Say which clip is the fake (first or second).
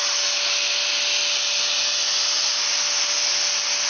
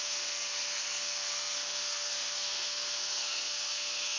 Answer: second